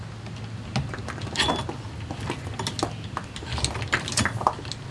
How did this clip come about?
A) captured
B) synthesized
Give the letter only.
A